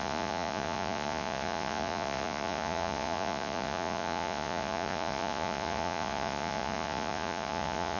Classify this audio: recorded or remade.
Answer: remade